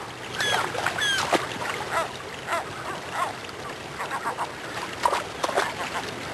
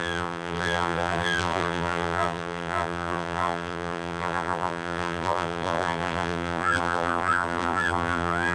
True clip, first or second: first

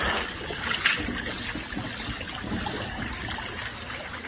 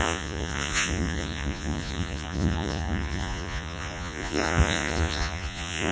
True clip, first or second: first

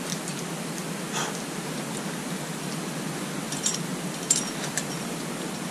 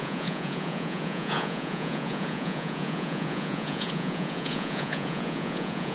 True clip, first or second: first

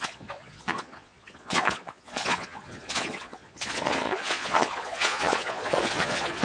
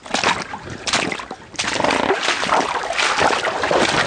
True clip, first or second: second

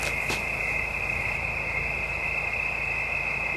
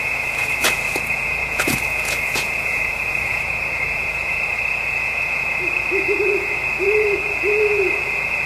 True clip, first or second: first